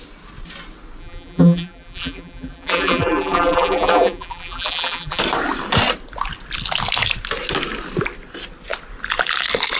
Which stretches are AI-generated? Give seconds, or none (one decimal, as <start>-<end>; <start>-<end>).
1.0-5.2